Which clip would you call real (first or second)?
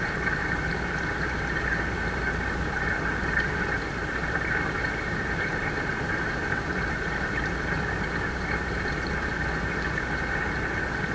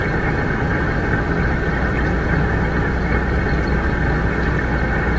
second